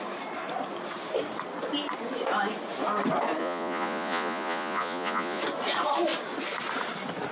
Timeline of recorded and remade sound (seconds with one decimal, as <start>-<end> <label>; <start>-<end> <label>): 0.0-3.4 recorded; 3.4-5.4 remade; 5.4-7.3 recorded